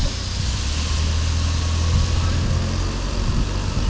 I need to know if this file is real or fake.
real